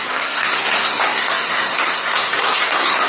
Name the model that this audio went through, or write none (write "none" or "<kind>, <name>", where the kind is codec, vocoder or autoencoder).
codec, SNAC